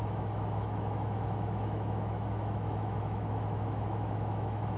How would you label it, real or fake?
fake